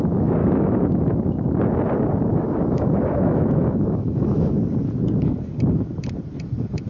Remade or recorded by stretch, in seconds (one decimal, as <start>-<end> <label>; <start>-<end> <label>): 0.0-0.4 recorded; 0.4-1.2 remade; 1.2-2.3 recorded; 2.3-4.6 remade; 4.6-6.9 recorded